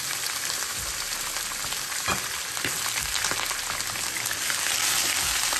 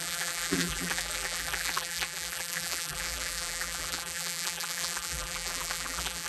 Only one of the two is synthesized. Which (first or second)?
second